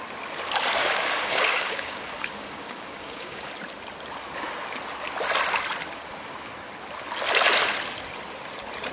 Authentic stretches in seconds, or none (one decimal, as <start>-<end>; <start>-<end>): 0.0-0.8; 3.5-8.9